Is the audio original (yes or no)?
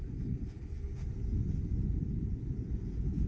yes